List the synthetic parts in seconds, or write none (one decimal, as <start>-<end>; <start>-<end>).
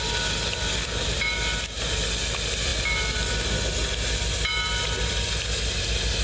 none